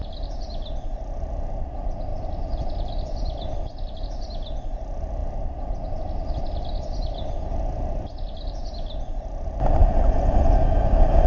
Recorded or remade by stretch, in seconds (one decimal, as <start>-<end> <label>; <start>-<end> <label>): 0.0-2.1 recorded; 2.1-4.0 remade; 4.0-5.2 recorded; 5.2-6.0 remade; 6.0-9.8 recorded; 9.8-10.5 remade; 10.5-11.3 recorded